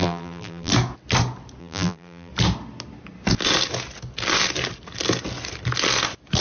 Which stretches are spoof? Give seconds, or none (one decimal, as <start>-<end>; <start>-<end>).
0.0-0.7; 1.6-2.3